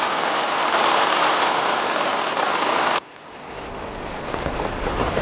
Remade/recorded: recorded